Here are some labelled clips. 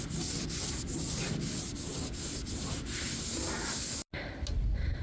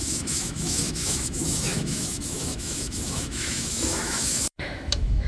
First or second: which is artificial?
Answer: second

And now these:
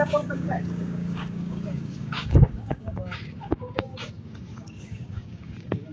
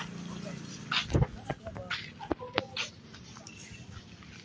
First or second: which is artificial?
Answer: first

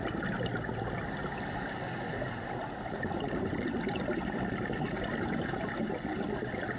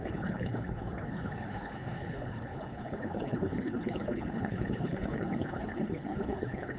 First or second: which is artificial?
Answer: second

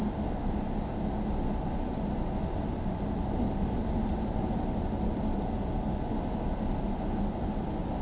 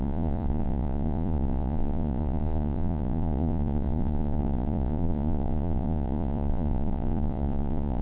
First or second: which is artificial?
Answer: second